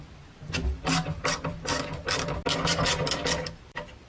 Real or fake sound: real